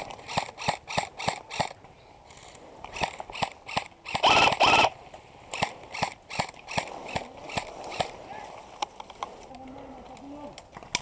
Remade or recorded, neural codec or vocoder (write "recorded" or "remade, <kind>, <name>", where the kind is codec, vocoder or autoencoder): recorded